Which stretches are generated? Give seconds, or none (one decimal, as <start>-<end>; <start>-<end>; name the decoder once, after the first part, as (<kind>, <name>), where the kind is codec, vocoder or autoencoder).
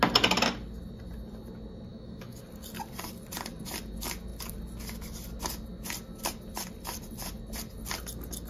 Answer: 1.9-2.4 (autoencoder, DAC-VAE)